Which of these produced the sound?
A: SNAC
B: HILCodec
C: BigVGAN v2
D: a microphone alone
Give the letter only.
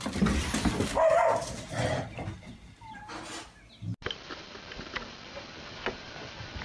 D